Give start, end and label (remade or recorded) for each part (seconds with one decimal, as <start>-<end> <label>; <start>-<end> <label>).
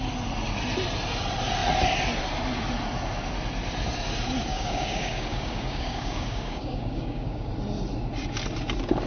0.0-4.5 recorded; 4.5-7.5 remade; 7.5-9.1 recorded